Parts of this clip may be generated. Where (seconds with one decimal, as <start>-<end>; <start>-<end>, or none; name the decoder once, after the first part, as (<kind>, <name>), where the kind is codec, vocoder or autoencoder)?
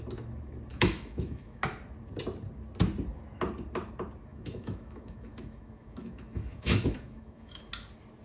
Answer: 0.7-1.6 (autoencoder, DAC-VAE); 4.3-7.7